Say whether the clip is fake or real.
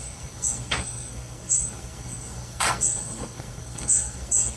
fake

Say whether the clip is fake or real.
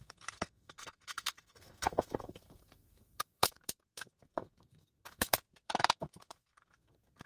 fake